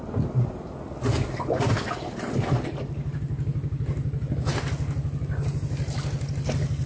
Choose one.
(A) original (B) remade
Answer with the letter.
A